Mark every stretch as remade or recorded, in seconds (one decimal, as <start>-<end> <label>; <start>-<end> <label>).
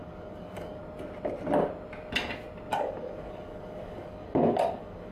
0.0-0.8 remade; 0.8-2.7 recorded; 2.7-5.1 remade